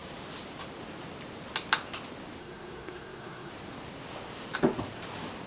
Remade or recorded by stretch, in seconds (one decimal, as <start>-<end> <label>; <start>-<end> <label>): 0.0-2.4 recorded; 2.4-3.5 remade; 3.5-5.5 recorded